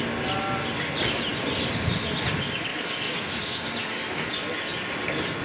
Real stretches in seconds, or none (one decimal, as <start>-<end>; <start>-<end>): 0.0-2.7; 4.3-5.4